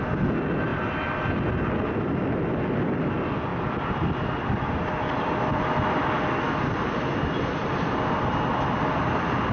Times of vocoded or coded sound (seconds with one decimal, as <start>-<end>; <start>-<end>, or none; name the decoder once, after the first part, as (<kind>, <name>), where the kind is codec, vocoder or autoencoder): 3.5-6.1 (vocoder, BigVGAN v2)